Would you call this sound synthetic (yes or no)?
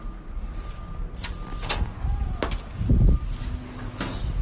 no